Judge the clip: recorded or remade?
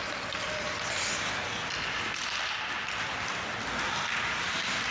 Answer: recorded